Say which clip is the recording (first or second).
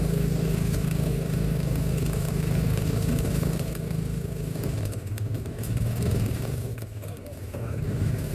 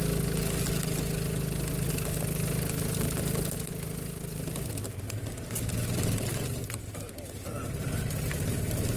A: second